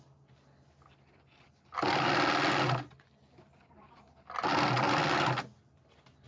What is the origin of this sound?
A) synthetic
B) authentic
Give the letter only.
B